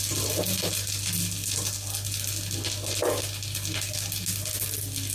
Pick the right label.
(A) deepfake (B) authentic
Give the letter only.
B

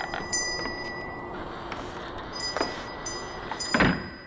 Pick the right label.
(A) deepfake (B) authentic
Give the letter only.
A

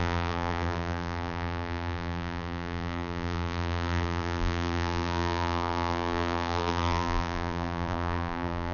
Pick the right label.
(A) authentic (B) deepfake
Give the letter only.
B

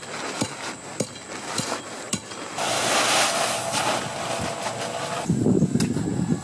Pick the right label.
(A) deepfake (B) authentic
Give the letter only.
B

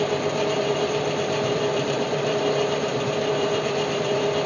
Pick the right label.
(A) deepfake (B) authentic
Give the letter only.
A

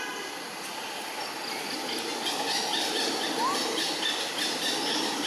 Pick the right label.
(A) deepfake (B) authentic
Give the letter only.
B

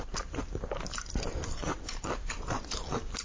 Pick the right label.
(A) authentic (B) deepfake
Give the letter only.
B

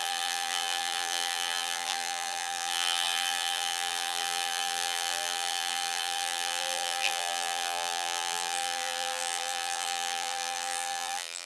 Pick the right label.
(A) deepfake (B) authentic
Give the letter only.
A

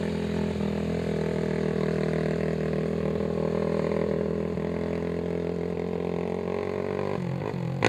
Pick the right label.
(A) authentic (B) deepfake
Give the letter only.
A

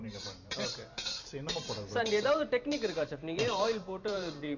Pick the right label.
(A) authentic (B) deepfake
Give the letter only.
B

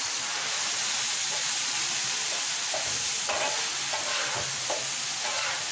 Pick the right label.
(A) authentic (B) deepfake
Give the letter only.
B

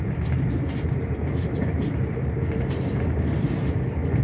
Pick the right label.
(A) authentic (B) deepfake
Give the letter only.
B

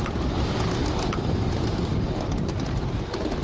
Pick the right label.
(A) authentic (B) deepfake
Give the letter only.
A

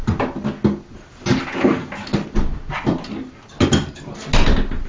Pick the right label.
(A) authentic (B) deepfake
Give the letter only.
A